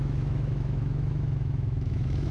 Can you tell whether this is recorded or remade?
remade